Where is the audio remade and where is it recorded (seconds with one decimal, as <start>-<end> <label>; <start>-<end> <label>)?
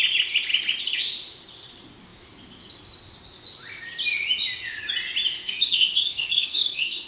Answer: 0.0-5.4 recorded; 5.4-7.1 remade